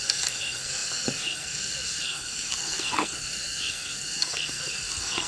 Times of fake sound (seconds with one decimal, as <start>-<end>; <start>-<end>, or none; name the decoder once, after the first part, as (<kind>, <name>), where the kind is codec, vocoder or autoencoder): 0.0-5.3 (codec, SNAC)